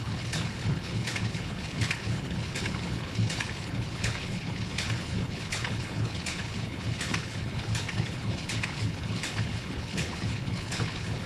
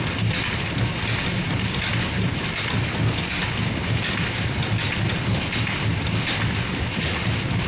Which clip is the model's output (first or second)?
first